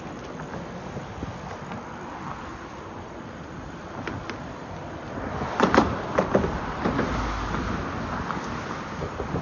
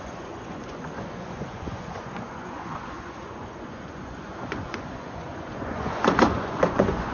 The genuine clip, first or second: first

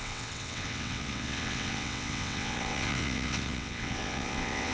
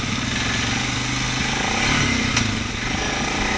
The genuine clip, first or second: second